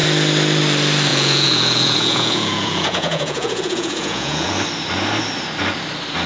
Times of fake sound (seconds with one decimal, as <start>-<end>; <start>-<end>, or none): 1.1-4.5